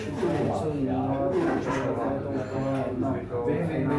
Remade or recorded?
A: recorded